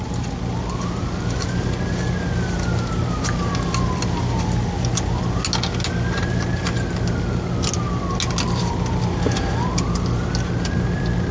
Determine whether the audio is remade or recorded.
recorded